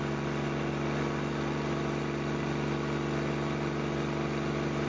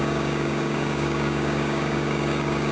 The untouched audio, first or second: first